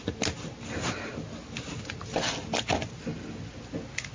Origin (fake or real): real